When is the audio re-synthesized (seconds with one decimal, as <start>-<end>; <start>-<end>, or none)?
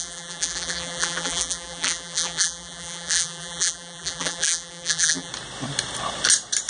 0.0-5.3